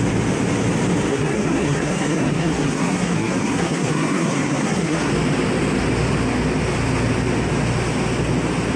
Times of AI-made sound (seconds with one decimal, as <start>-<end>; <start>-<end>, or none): 1.1-5.1